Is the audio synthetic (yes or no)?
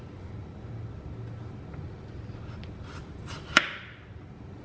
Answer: no